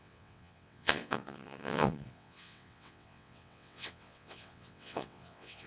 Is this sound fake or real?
fake